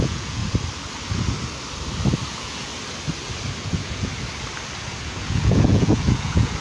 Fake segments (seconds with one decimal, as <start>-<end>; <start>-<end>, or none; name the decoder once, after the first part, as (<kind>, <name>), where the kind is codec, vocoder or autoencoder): 0.0-0.4 (vocoder, Vocos); 2.3-2.7; 3.6-4.1; 5.0-6.6